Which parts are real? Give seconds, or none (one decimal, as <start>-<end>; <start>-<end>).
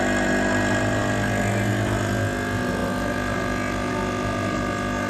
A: 0.0-5.1